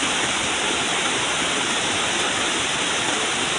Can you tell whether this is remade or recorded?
recorded